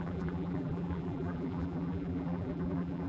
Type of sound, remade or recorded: remade